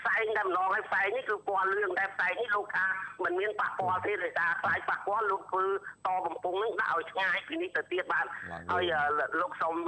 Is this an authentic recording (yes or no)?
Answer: yes